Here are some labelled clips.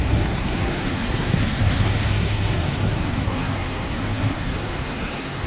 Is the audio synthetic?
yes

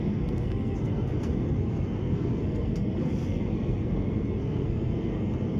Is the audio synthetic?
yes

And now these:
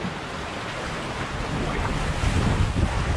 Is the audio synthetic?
no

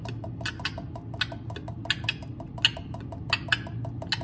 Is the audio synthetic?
no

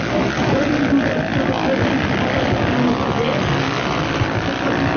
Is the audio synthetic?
no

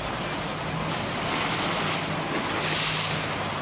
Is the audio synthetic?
no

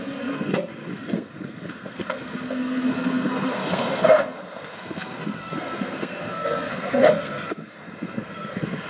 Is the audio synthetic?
yes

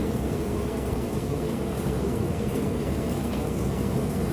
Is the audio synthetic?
yes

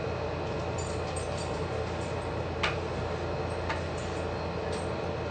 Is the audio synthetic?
no